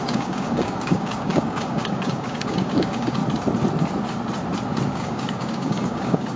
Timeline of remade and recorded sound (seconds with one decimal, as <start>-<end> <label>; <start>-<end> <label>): 0.0-3.2 remade; 3.2-4.9 recorded; 4.9-6.4 remade